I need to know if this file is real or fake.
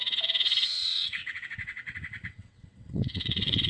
fake